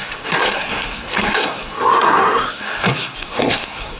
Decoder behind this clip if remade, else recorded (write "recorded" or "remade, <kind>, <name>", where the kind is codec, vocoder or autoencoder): remade, codec, SNAC